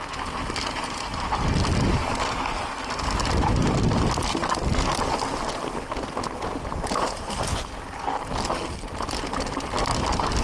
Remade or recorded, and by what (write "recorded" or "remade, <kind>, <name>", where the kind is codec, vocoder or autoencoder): recorded